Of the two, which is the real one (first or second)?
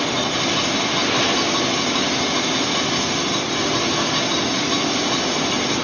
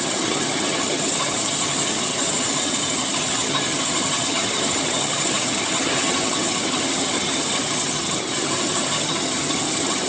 first